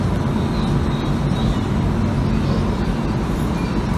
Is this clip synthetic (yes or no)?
no